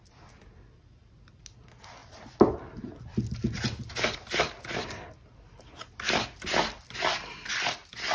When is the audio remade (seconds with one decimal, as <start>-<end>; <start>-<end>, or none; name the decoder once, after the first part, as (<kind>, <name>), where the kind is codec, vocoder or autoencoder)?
none